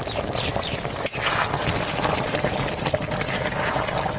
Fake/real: real